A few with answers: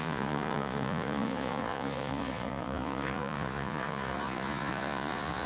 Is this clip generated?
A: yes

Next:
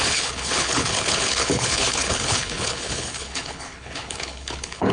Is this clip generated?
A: yes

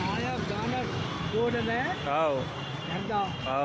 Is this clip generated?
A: no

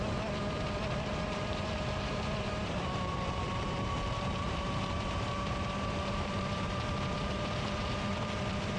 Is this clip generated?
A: yes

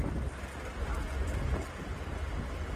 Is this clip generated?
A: no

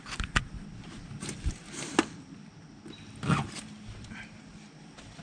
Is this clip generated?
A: yes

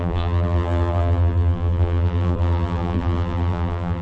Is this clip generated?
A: yes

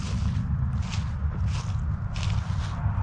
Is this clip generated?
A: no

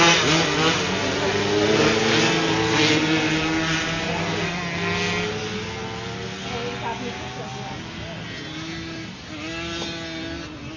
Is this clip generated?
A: no